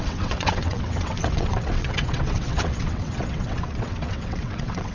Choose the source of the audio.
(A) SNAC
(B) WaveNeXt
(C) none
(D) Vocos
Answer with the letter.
B